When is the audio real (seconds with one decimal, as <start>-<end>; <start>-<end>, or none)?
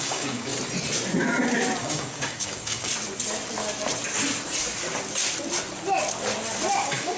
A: 0.5-1.8; 2.9-6.8